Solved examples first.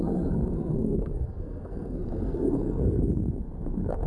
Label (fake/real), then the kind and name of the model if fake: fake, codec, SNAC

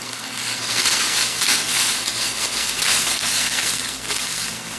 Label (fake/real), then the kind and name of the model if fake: fake, codec, SNAC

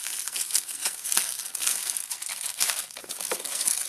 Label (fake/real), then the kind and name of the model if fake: fake, codec, SNAC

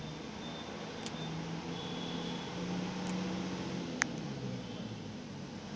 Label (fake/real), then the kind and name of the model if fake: real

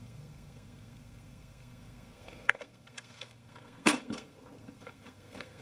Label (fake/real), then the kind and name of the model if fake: fake, codec, SNAC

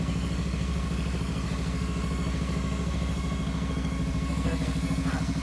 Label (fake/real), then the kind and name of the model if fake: fake, codec, SNAC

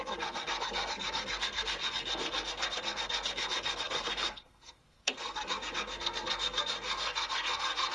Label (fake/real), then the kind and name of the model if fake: fake, codec, SNAC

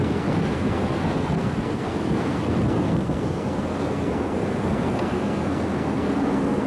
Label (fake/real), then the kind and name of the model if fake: fake, codec, SNAC